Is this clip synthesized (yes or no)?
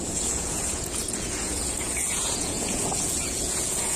yes